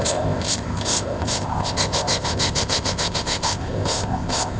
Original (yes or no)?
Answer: no